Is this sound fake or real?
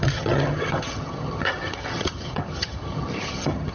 fake